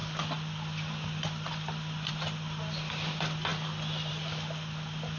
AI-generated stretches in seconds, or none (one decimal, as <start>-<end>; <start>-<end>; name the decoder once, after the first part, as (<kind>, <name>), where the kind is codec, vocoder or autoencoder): none